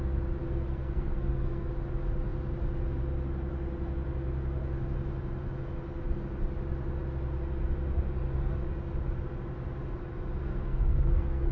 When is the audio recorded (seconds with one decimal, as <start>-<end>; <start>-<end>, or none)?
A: 0.0-0.4; 1.7-10.4

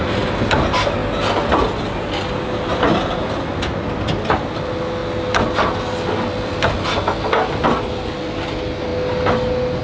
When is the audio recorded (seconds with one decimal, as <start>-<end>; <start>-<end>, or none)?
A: 0.0-9.8

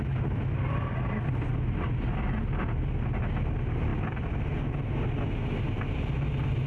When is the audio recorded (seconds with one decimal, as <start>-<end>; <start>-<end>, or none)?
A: 0.0-6.7

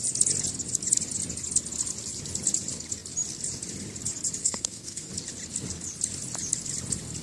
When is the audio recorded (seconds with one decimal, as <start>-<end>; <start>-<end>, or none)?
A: 0.0-4.4; 5.1-7.2

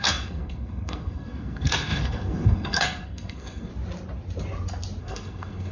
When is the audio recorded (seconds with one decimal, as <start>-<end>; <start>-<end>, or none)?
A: 3.7-5.0

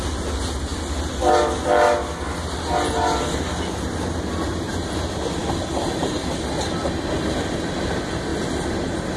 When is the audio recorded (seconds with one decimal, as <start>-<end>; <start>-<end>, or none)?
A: 0.0-9.2

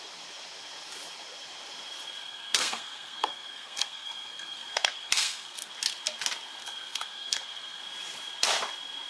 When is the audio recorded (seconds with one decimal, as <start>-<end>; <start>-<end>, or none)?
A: 0.0-2.2; 5.7-6.6; 7.8-9.1

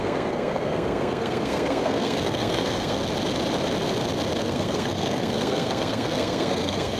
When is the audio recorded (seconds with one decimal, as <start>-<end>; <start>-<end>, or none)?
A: 3.0-4.4